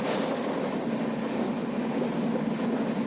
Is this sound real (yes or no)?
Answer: yes